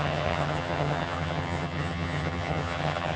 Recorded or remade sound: remade